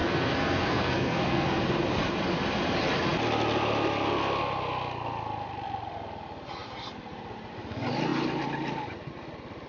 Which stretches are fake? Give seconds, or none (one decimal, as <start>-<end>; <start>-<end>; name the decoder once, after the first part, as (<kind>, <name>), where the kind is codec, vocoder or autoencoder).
0.0-1.6 (codec, SNAC)